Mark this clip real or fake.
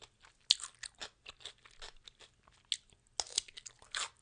real